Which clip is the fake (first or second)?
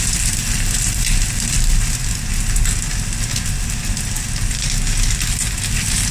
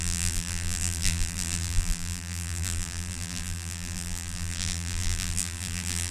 second